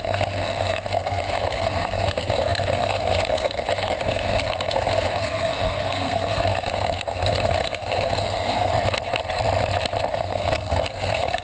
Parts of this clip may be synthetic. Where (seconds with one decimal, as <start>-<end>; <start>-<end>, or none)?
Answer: 0.0-8.7; 10.1-11.4